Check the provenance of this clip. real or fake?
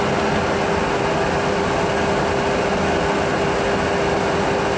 real